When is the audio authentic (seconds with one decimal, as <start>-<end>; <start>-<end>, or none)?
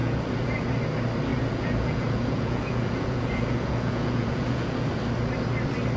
0.7-1.3; 4.9-6.0